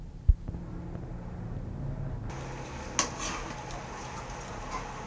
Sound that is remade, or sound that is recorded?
recorded